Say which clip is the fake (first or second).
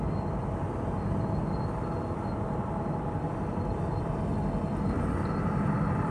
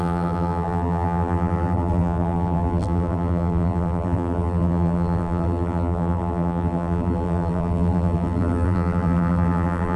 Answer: second